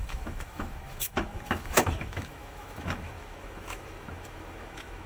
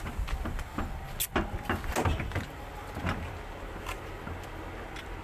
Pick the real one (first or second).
second